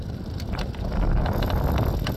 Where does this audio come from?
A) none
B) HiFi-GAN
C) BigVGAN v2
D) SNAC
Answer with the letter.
A